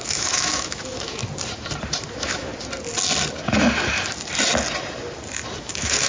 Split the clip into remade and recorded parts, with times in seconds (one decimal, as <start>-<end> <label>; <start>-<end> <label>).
0.0-1.2 remade; 1.2-2.1 recorded; 2.1-2.5 remade; 2.5-5.6 recorded; 5.6-6.1 remade